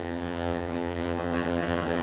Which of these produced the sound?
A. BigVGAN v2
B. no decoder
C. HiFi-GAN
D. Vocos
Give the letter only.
C